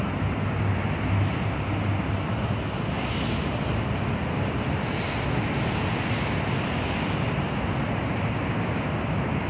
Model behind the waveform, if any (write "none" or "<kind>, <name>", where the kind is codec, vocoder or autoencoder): none